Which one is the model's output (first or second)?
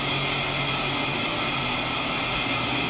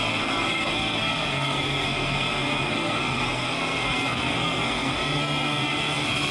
second